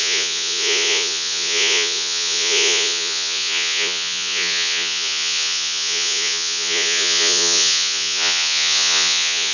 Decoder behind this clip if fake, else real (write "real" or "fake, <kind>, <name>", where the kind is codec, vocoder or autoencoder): fake, vocoder, Vocos